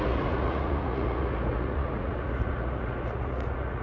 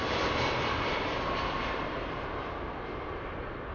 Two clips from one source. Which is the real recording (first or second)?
second